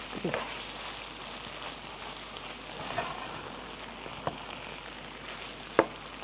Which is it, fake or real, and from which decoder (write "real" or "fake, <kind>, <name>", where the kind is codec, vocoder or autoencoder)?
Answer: real